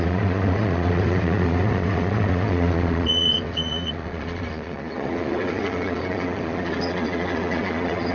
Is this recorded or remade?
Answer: remade